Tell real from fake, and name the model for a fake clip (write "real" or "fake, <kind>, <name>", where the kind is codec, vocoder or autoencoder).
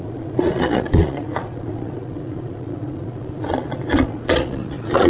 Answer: fake, vocoder, Vocos